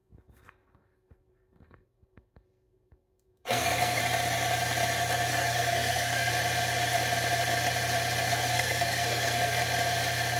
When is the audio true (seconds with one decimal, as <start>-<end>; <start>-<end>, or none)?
4.0-5.3; 6.3-8.3; 9.6-10.4